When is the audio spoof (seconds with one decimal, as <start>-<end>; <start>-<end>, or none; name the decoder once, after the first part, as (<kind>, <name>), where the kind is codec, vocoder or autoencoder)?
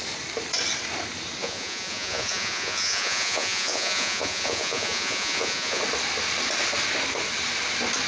1.4-5.8 (vocoder, Vocos)